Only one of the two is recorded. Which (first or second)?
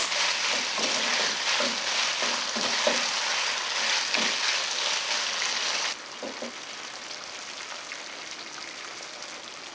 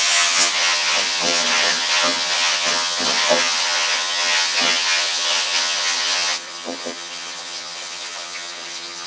first